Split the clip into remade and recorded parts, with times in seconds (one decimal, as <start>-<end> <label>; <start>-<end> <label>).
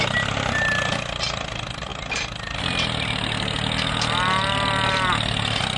0.0-5.8 recorded